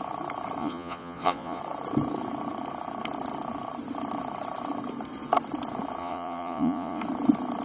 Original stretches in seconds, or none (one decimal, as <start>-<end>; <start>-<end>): 0.0-0.6; 1.6-6.0; 7.0-7.6